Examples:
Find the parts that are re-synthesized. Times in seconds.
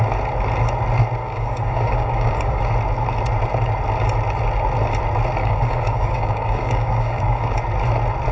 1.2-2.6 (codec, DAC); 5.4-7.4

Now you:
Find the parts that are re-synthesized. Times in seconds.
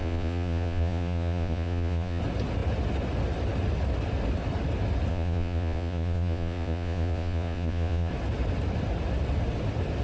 0.0-2.2 (vocoder, Vocos); 5.1-8.1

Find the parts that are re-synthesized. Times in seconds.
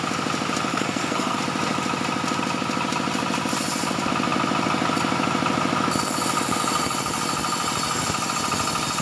0.7-1.4 (codec, SNAC)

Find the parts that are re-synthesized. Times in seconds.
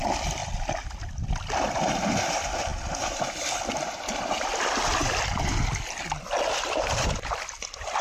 none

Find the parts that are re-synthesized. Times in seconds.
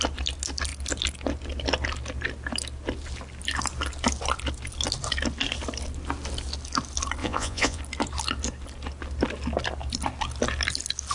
7.2-7.8 (vocoder, Vocos)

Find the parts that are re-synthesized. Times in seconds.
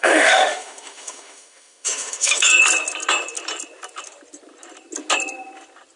0.0-2.5 (autoencoder, DAC-VAE)